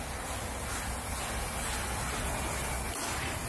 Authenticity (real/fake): real